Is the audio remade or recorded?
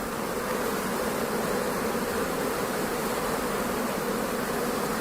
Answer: recorded